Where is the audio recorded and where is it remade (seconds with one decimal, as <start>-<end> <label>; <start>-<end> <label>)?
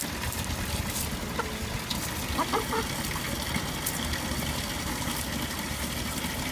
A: 0.0-6.5 recorded